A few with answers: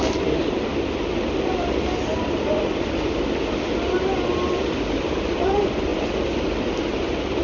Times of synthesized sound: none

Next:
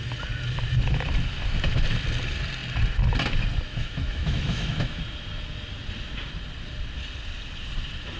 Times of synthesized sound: 3.7-5.0 (autoencoder, DAC-VAE)